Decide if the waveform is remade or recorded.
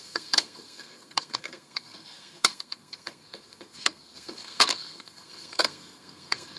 remade